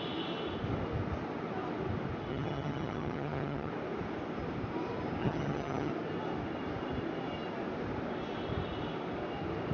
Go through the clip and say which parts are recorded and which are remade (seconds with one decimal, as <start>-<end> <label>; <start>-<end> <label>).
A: 0.0-2.3 recorded; 2.3-3.7 remade; 3.7-5.2 recorded; 5.2-5.9 remade; 5.9-9.7 recorded